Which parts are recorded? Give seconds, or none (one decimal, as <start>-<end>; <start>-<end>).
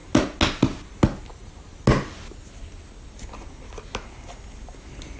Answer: 0.0-5.2